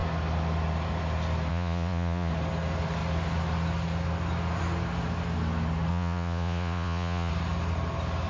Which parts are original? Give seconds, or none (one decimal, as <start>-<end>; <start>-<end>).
0.0-1.5; 2.3-5.9; 7.3-8.3